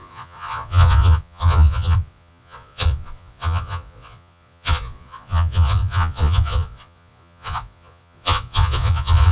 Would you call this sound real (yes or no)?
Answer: no